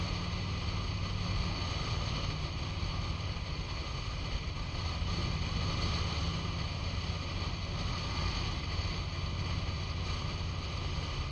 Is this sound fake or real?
real